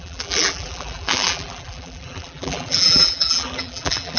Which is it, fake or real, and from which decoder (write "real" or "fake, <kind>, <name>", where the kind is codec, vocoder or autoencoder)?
fake, vocoder, BigVGAN v2